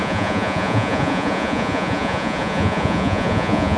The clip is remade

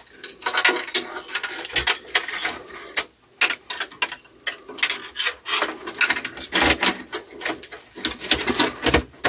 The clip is recorded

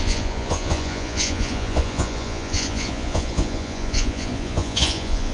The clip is remade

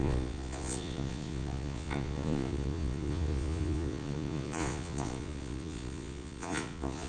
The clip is remade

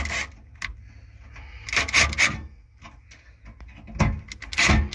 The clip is recorded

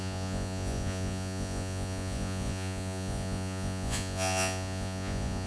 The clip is remade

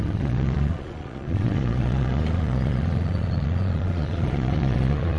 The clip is remade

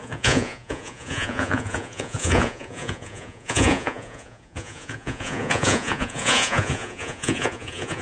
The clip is remade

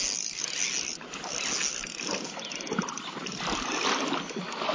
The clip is recorded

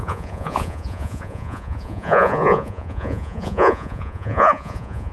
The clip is remade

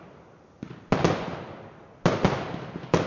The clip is recorded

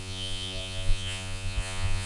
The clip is remade